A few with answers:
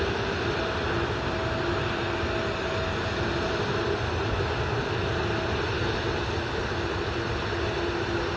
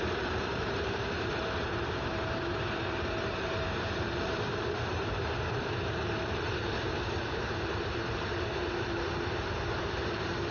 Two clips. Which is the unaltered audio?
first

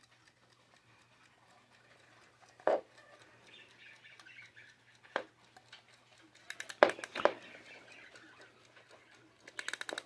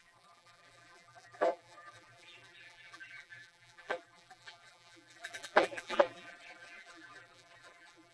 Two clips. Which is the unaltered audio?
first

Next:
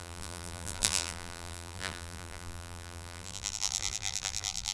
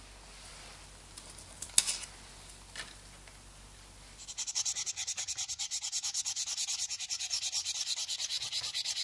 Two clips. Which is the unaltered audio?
second